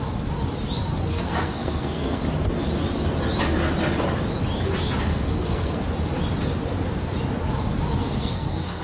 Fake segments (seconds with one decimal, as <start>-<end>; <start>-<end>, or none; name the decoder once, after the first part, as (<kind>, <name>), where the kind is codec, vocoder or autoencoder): 1.1-2.2 (codec, SNAC); 5.0-5.8; 8.0-8.8